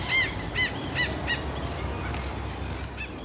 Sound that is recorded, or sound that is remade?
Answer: recorded